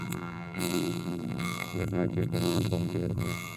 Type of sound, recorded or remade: remade